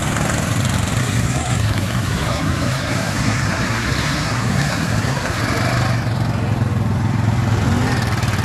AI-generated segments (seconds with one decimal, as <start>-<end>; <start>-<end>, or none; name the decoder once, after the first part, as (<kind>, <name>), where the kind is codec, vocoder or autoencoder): 1.0-5.4 (codec, SNAC)